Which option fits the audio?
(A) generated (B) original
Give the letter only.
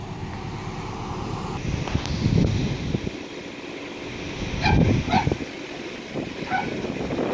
B